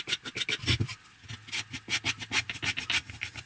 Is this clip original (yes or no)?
yes